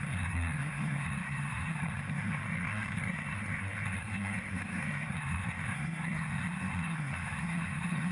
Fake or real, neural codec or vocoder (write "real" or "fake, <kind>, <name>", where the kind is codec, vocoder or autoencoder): fake, codec, SNAC